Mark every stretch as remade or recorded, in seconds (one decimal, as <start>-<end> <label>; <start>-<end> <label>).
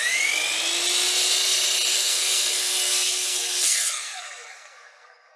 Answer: 0.0-1.9 recorded; 1.9-5.4 remade